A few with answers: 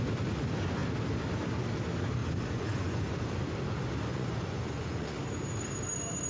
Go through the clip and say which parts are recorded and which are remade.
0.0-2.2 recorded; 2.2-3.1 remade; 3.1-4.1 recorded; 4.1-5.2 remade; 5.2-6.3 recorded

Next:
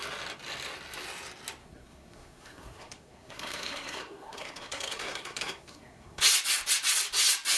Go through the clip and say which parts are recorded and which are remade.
0.0-1.6 recorded; 1.6-6.2 remade; 6.2-7.6 recorded